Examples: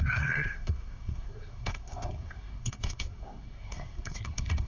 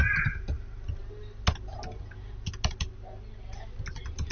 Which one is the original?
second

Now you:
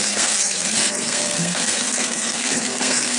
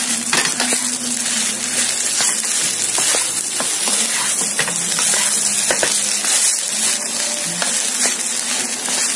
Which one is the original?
second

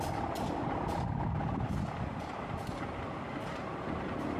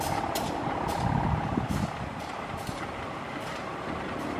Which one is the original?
first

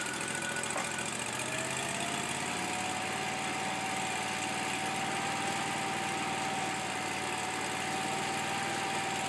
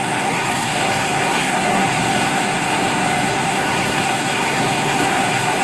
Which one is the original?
first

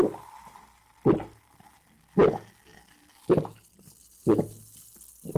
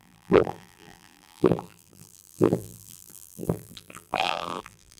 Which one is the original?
first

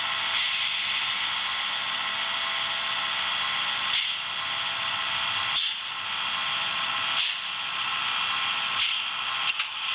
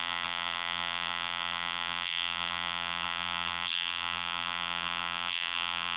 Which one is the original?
first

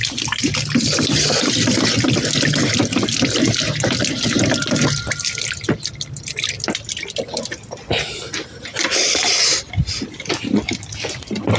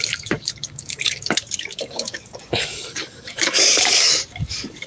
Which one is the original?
first